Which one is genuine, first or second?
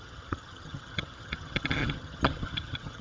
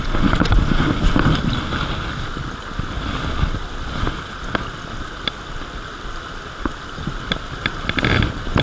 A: second